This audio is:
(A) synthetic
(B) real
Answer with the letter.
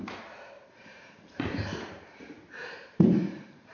A